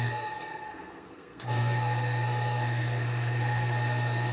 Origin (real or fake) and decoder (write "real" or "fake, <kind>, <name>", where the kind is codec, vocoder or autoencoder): fake, codec, SNAC